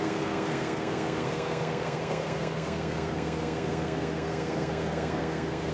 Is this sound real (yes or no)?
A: no